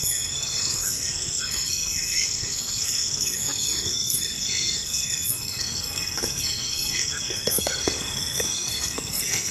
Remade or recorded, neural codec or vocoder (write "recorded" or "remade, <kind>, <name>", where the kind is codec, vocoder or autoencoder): remade, codec, SNAC